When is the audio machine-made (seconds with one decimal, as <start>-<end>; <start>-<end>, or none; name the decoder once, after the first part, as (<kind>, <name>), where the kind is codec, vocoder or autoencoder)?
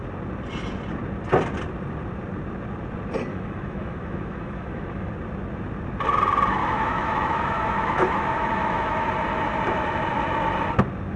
3.3-5.1 (autoencoder, DAC-VAE); 6.6-9.1